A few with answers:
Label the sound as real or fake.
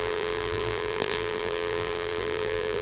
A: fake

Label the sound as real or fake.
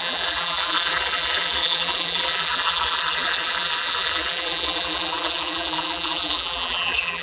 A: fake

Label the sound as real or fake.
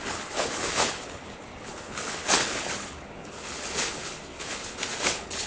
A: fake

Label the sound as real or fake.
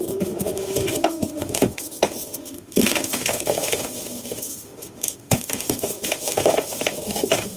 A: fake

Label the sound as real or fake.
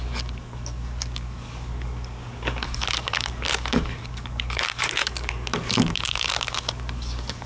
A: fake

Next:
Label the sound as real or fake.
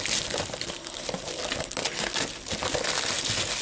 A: real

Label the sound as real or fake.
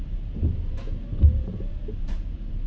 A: fake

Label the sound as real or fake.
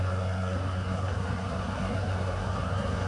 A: fake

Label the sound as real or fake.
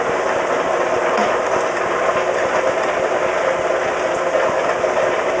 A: real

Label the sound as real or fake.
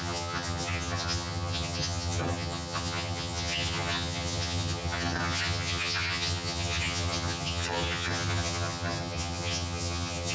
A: fake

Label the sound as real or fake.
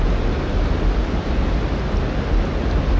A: real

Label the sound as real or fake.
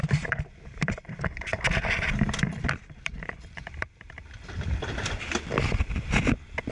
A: fake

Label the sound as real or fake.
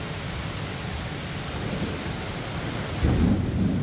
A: real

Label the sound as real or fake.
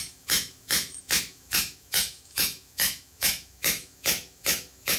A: fake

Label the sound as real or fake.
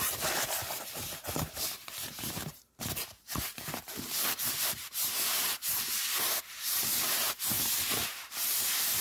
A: fake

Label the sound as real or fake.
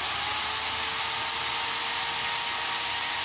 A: real